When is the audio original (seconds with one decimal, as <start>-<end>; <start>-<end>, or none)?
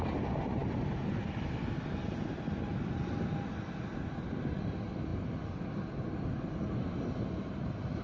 0.0-8.0